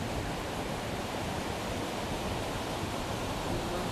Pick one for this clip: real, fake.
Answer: real